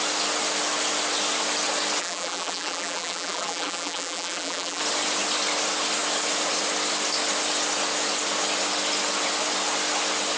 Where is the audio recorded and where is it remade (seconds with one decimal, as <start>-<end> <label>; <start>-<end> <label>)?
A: 0.0-2.0 recorded; 2.0-4.8 remade; 4.8-10.4 recorded